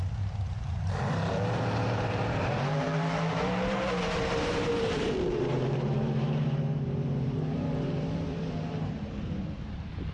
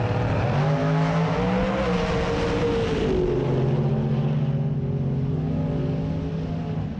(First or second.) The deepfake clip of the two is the first